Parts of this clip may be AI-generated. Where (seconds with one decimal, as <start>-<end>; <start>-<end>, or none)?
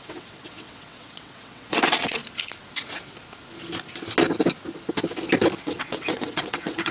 0.0-2.2; 5.6-6.9